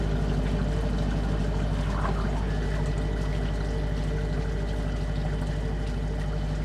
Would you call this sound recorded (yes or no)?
yes